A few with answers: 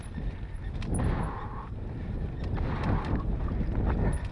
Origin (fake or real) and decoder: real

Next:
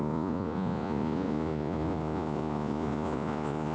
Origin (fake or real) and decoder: fake, vocoder, Vocos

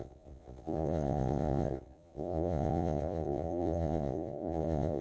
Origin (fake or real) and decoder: fake, vocoder, Vocos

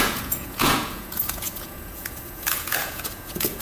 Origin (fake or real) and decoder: fake, vocoder, Vocos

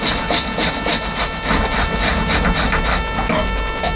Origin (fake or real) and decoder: real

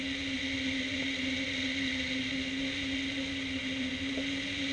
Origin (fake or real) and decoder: real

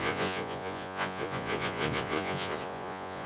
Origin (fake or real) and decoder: fake, vocoder, Vocos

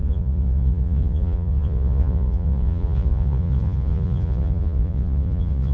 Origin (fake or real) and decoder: fake, vocoder, Vocos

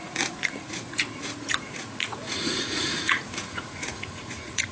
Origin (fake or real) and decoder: fake, vocoder, Vocos